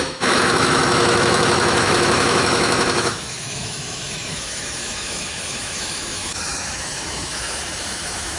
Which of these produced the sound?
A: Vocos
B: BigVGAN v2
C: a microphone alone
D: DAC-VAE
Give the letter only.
D